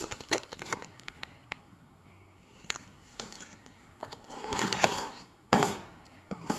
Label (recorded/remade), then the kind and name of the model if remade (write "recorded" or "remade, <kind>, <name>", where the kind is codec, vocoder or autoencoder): remade, codec, SNAC